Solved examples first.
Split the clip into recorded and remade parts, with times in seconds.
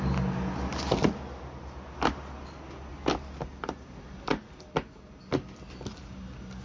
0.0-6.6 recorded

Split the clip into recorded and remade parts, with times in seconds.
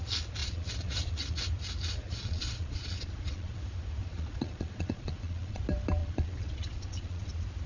0.0-0.4 recorded; 0.4-1.4 remade; 1.4-2.0 recorded; 2.0-3.6 remade; 3.6-4.0 recorded; 4.0-5.6 remade; 5.6-6.0 recorded; 6.0-7.3 remade; 7.3-7.7 recorded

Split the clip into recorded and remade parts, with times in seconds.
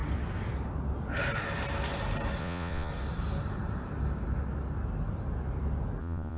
0.0-2.4 recorded; 2.4-2.9 remade; 2.9-6.0 recorded; 6.0-6.4 remade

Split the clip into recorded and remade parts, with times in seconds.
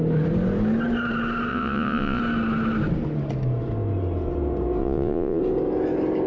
0.0-1.5 recorded; 1.5-2.2 remade; 2.2-4.8 recorded; 4.8-5.4 remade; 5.4-6.3 recorded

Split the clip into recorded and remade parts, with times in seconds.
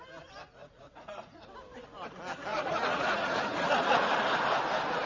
0.0-0.6 recorded; 0.6-1.4 remade; 1.4-2.5 recorded; 2.5-4.1 remade; 4.1-5.1 recorded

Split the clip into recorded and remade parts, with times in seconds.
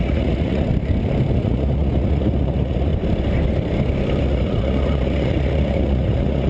0.0-0.7 remade; 0.7-1.3 recorded; 1.3-2.9 remade; 2.9-4.2 recorded; 4.2-6.5 remade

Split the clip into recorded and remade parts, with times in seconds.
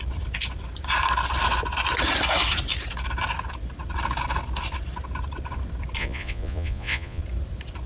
0.0-6.0 recorded; 6.0-7.2 remade; 7.2-7.9 recorded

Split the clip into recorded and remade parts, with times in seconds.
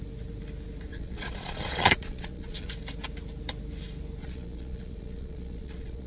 0.0-0.9 recorded; 0.9-2.7 remade; 2.7-4.2 recorded; 4.2-6.1 remade